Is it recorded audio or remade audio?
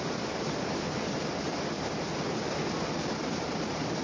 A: recorded